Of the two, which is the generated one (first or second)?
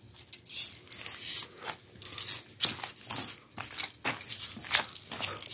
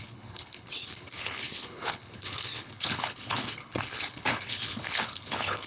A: second